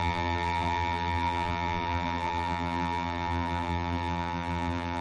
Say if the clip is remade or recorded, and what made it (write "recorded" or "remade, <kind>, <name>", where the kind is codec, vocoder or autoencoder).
remade, vocoder, BigVGAN v2